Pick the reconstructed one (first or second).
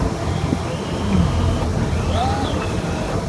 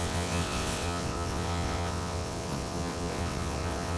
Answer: second